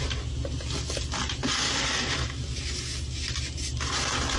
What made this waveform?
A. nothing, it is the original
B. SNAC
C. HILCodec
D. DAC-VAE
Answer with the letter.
A